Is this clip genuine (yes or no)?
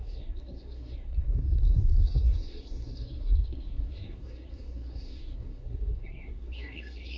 no